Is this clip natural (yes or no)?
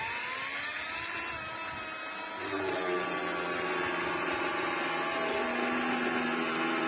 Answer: yes